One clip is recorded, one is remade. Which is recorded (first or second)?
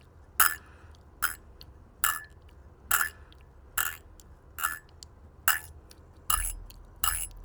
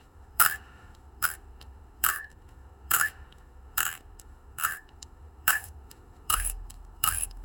first